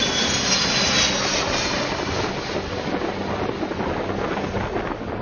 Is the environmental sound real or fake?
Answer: real